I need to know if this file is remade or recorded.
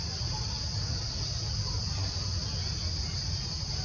recorded